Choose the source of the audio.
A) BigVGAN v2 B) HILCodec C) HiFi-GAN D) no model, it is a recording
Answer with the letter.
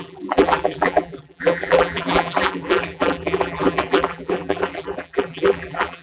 A